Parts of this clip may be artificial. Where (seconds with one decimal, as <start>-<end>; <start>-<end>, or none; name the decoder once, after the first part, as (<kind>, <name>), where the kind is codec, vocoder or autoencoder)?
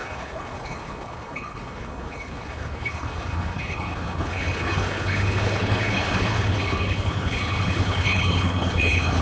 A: 0.0-9.2 (codec, HILCodec)